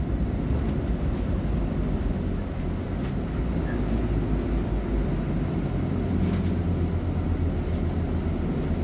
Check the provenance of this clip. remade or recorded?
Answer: recorded